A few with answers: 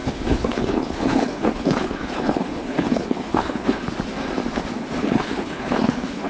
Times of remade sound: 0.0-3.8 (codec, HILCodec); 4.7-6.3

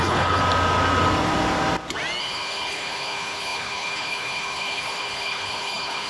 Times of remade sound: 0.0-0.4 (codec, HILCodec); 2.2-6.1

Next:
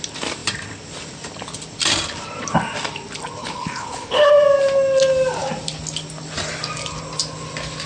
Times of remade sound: 3.4-4.3 (codec, HILCodec)

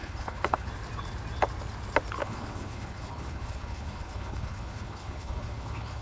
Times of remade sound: 0.0-0.7 (codec, HILCodec); 2.2-6.0

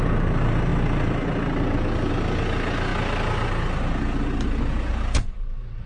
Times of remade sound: none